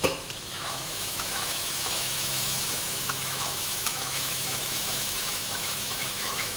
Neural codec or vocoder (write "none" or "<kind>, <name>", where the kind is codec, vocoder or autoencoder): autoencoder, DAC-VAE